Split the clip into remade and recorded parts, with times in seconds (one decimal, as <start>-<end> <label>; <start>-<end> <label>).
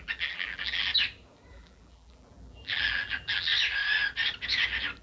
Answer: 0.0-0.9 remade; 0.9-1.5 recorded; 1.5-3.5 remade; 3.5-5.0 recorded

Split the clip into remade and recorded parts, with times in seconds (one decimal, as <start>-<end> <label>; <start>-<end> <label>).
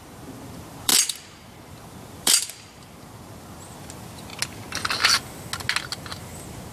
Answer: 0.0-0.9 remade; 0.9-1.7 recorded; 1.7-4.3 remade; 4.3-6.7 recorded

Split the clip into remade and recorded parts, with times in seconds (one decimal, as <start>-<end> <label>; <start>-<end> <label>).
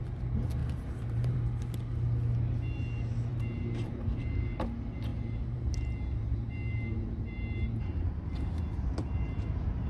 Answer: 0.0-0.6 recorded; 0.6-1.4 remade; 1.4-3.3 recorded; 3.3-4.2 remade; 4.2-5.1 recorded; 5.1-8.2 remade; 8.2-9.9 recorded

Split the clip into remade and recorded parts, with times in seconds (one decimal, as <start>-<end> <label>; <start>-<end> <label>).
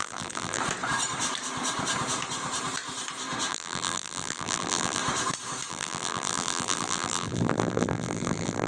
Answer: 0.0-0.6 remade; 0.6-3.5 recorded; 3.5-5.0 remade; 5.0-5.7 recorded; 5.7-8.7 remade